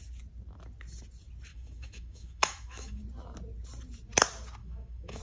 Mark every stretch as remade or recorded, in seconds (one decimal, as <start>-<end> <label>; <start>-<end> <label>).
0.0-1.5 recorded; 1.5-3.0 remade; 3.0-4.6 recorded; 4.6-5.2 remade